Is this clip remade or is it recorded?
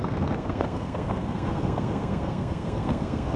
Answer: remade